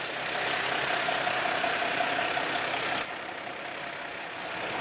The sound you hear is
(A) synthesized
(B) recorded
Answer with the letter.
B